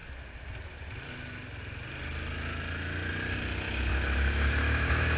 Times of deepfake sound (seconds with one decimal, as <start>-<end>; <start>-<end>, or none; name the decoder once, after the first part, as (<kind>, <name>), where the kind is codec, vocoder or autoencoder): 3.9-5.2 (autoencoder, DAC-VAE)